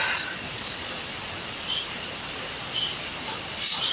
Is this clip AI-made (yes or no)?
no